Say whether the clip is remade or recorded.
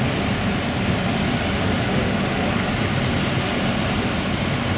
recorded